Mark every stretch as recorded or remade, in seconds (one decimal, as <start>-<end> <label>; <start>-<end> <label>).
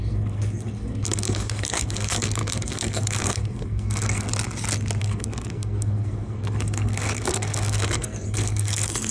0.0-4.3 remade; 4.3-5.0 recorded; 5.0-9.1 remade